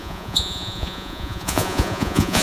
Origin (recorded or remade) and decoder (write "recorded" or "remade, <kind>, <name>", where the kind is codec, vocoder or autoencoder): remade, vocoder, Vocos